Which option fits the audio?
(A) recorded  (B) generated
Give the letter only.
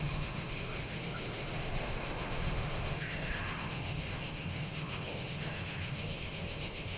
B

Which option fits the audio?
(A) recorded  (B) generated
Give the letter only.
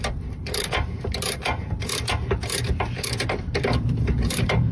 B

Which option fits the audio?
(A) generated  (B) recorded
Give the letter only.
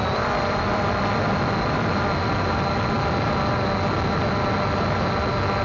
B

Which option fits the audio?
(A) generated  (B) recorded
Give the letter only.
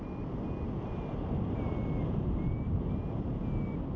B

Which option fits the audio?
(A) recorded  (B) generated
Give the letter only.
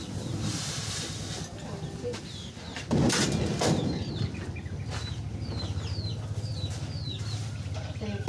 A